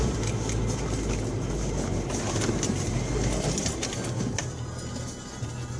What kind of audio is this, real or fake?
real